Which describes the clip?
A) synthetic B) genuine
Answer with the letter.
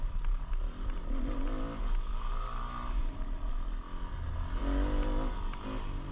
B